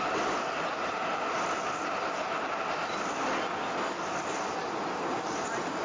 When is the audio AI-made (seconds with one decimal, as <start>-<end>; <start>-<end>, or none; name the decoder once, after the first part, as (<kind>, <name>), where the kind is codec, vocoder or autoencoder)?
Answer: none